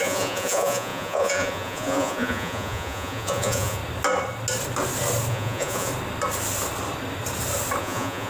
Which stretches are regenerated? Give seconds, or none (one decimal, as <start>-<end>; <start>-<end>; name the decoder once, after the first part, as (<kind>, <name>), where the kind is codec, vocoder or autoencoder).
0.0-3.8 (vocoder, Vocos); 5.3-5.9; 7.8-8.3